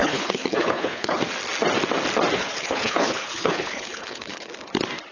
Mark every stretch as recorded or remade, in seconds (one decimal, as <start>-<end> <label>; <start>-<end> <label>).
0.0-1.2 remade; 1.2-2.4 recorded; 2.4-4.5 remade; 4.5-5.1 recorded